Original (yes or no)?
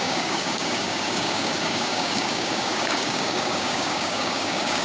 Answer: no